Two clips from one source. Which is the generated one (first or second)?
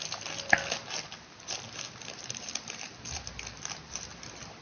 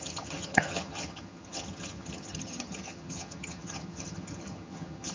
second